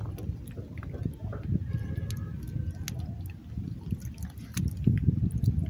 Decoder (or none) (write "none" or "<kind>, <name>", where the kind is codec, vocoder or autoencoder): none